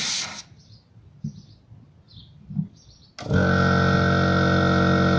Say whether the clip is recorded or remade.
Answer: recorded